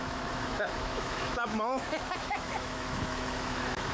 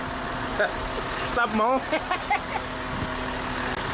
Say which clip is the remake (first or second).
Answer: first